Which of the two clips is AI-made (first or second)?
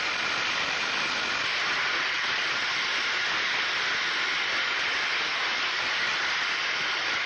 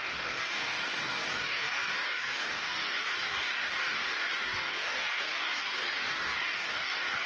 second